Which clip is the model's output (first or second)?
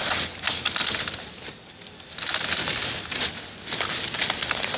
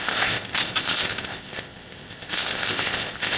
second